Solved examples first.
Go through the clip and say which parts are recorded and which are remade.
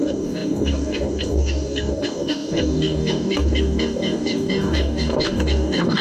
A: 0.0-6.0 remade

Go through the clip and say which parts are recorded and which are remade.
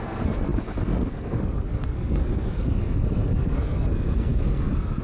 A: 0.0-5.0 remade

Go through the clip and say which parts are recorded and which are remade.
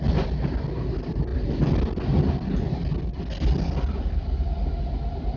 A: 0.0-5.4 recorded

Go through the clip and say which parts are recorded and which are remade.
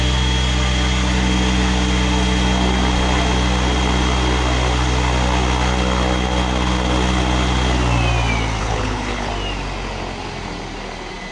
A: 0.0-8.6 recorded; 8.6-9.3 remade; 9.3-11.3 recorded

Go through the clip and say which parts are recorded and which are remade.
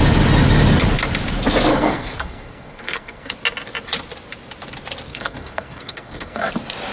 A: 0.0-1.7 recorded; 1.7-3.3 remade; 3.3-5.1 recorded; 5.1-6.5 remade; 6.5-6.9 recorded